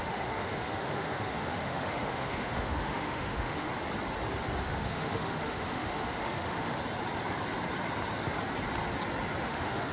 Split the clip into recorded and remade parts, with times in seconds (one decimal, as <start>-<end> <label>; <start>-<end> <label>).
0.0-3.7 remade; 3.7-4.6 recorded; 4.6-6.8 remade; 6.8-9.4 recorded; 9.4-9.9 remade

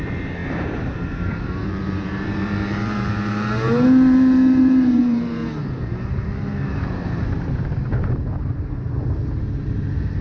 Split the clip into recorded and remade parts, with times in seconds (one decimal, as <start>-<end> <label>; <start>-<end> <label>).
0.0-5.4 remade; 5.4-6.1 recorded; 6.1-10.2 remade